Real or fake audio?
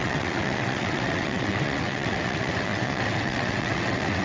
fake